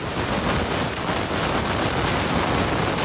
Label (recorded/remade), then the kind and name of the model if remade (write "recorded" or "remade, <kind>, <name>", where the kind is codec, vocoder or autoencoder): recorded